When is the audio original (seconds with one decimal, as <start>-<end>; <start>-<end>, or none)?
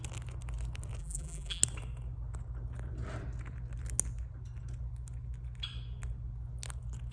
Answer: 0.0-1.0; 1.6-7.1